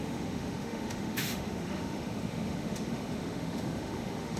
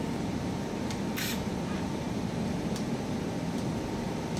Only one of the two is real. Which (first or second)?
second